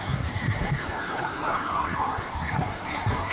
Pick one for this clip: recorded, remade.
remade